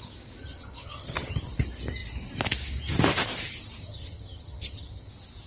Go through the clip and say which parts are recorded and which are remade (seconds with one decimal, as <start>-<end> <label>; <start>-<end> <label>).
0.0-0.4 recorded; 0.4-1.3 remade; 1.3-3.8 recorded; 3.8-5.1 remade; 5.1-5.5 recorded

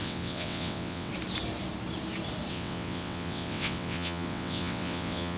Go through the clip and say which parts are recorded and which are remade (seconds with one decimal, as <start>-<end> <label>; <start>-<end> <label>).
0.0-1.1 remade; 1.1-2.5 recorded; 2.5-5.4 remade